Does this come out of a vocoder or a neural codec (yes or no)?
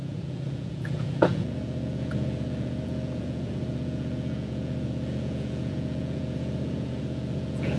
yes